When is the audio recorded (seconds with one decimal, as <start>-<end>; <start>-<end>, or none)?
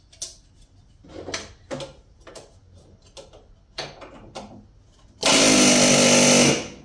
0.0-6.8